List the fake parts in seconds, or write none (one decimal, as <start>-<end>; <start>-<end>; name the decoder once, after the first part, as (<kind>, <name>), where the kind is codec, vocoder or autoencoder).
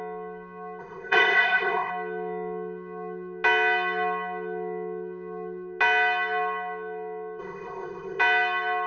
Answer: 0.8-1.9 (codec, ZipCodec); 7.4-8.2